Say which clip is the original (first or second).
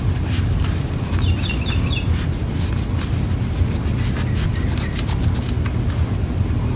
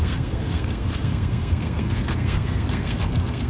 first